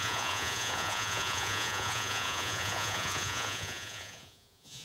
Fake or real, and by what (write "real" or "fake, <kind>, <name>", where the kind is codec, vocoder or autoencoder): fake, vocoder, Vocos